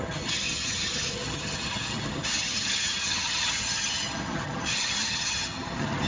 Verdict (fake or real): fake